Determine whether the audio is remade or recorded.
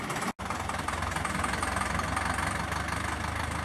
recorded